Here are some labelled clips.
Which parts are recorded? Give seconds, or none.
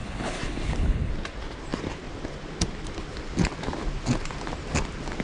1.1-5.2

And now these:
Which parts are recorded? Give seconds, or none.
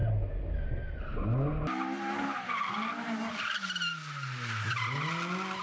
0.0-5.6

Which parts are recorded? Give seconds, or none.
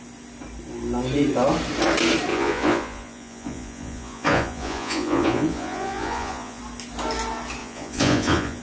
0.0-2.3; 6.6-7.6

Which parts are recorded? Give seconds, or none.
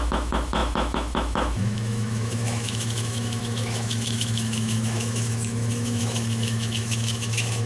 none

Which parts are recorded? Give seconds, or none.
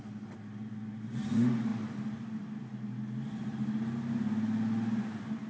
0.0-5.5